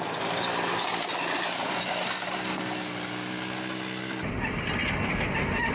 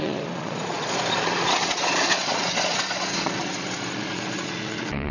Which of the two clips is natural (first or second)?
first